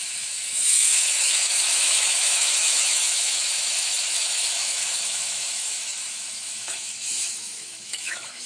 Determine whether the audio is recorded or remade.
remade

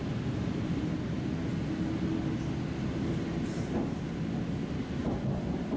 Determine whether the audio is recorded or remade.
recorded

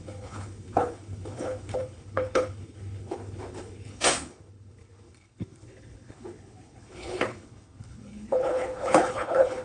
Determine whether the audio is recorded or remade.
remade